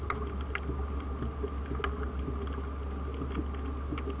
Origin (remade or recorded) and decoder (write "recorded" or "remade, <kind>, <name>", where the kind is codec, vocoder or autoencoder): recorded